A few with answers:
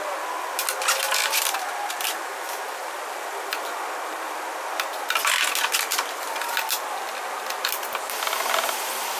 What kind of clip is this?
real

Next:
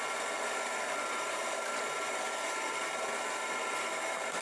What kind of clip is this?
fake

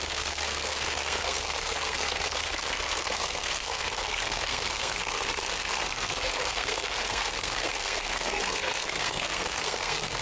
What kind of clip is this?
fake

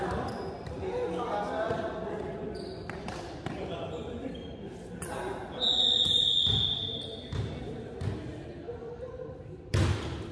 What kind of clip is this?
real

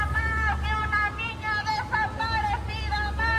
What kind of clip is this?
real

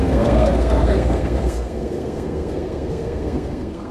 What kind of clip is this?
fake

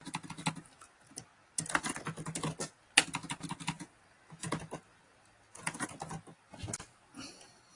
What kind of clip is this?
real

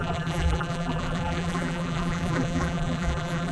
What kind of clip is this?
fake